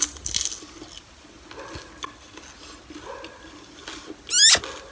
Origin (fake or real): real